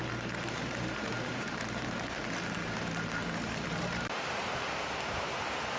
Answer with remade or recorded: remade